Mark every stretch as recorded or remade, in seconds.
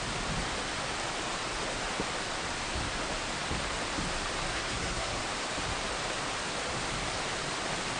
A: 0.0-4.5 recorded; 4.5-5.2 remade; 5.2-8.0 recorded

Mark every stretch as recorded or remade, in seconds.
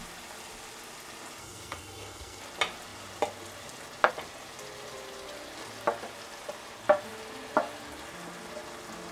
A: 0.0-1.4 recorded; 1.4-2.4 remade; 2.4-9.1 recorded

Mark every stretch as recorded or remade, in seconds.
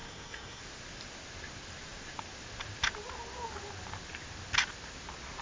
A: 0.0-0.6 remade; 0.6-5.4 recorded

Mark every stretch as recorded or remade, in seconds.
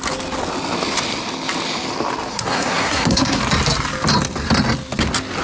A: 0.0-2.3 recorded; 2.3-3.4 remade; 3.4-5.4 recorded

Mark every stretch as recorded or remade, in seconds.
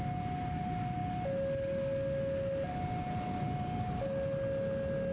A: 0.0-5.1 recorded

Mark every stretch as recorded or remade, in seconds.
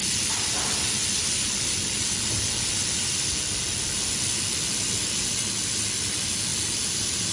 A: 0.0-7.3 recorded